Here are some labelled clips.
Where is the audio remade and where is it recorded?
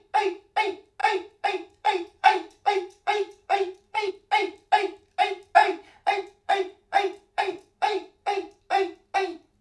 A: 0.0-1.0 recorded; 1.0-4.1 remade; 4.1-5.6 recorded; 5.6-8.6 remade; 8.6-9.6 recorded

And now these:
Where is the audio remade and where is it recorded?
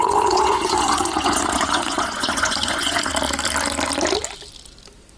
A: 0.0-3.1 remade; 3.1-5.2 recorded